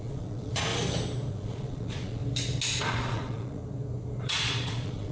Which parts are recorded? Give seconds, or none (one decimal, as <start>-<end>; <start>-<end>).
0.7-1.3; 2.2-2.8; 3.6-4.2